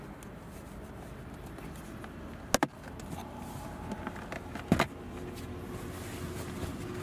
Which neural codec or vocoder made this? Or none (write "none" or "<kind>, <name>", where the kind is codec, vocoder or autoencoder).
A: none